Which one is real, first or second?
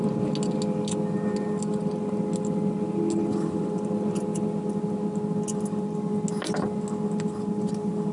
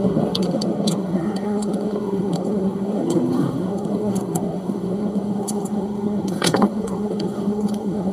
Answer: first